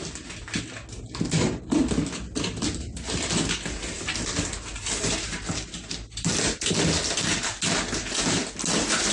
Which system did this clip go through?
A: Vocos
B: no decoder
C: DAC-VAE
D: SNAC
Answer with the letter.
B